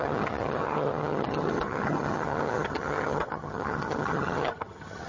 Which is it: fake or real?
fake